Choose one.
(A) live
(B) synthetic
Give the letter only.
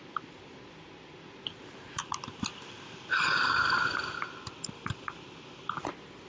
B